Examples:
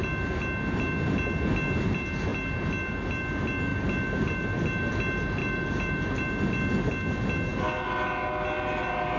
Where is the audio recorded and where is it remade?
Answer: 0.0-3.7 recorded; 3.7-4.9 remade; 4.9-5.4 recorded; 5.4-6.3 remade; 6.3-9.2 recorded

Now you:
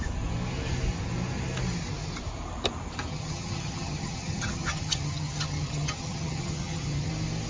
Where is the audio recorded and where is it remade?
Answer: 0.0-3.1 recorded; 3.1-7.1 remade; 7.1-7.5 recorded

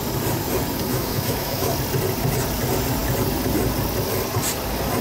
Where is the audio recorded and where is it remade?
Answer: 0.0-0.9 recorded; 0.9-1.7 remade; 1.7-5.0 recorded

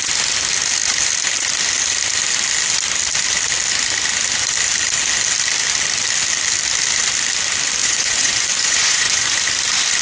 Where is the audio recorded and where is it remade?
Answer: 0.0-7.8 recorded; 7.8-9.4 remade; 9.4-10.0 recorded

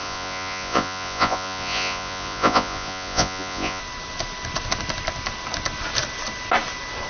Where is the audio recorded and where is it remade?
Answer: 0.0-3.8 remade; 3.8-7.1 recorded

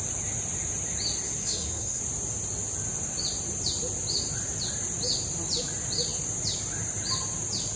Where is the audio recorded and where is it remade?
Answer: 0.0-1.4 recorded; 1.4-2.0 remade; 2.0-7.8 recorded

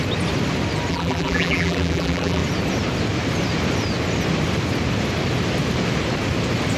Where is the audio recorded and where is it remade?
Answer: 0.0-0.9 recorded; 0.9-2.4 remade; 2.4-6.8 recorded

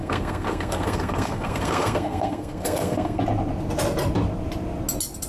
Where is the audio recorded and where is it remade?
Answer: 0.0-3.2 remade; 3.2-5.3 recorded